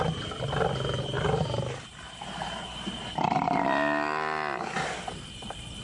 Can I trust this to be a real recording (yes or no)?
yes